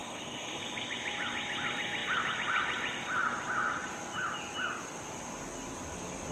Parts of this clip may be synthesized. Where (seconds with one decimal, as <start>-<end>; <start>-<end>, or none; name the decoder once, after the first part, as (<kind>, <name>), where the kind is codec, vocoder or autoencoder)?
0.0-0.6 (codec, SNAC)